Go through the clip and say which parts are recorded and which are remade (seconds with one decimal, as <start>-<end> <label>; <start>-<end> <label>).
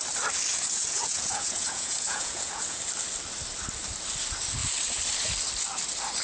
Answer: 0.0-0.5 recorded; 0.5-2.8 remade; 2.8-6.2 recorded